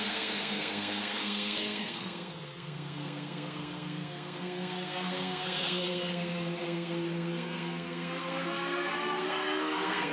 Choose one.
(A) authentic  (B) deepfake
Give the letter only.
B